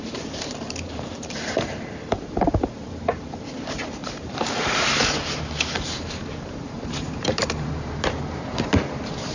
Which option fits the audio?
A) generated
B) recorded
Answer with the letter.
A